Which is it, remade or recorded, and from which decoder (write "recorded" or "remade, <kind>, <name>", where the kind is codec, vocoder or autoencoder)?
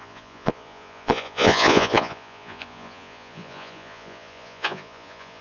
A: remade, vocoder, Vocos